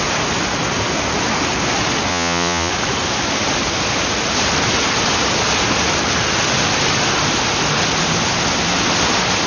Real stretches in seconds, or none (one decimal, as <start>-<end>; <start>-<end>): 0.0-2.1; 2.7-9.5